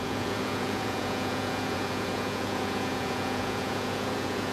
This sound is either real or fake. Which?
fake